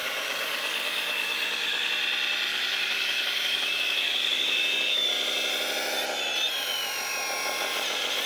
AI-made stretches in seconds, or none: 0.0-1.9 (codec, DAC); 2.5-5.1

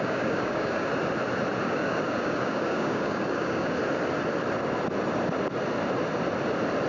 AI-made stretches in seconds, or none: 0.0-0.9 (codec, DAC); 1.6-3.8

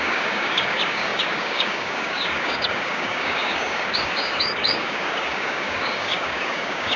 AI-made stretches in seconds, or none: 0.0-7.0 (codec, DAC)

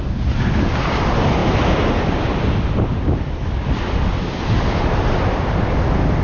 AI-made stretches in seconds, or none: none

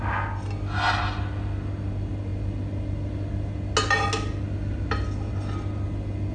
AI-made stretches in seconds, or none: none

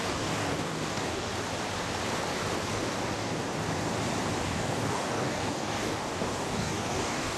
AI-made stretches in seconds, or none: 0.0-1.3 (codec, DAC); 2.7-3.4; 4.4-7.4